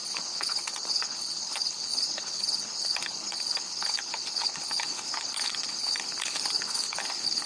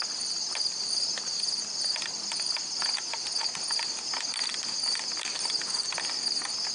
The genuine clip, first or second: second